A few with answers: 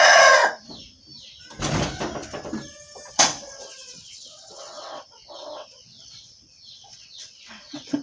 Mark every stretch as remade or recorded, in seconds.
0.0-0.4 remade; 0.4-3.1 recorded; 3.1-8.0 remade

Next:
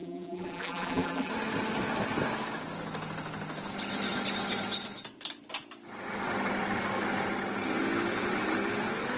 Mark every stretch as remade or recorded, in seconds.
0.0-1.3 remade; 1.3-9.2 recorded